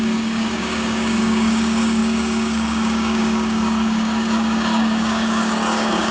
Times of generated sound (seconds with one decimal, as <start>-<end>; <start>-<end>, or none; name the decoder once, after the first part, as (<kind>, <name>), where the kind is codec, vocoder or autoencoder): 0.0-6.1 (codec, DAC)